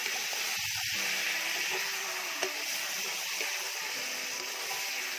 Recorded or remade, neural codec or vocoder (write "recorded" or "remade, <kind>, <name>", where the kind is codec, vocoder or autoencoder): recorded